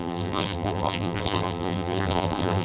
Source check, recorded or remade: remade